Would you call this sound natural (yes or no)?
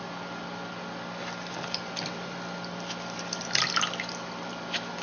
yes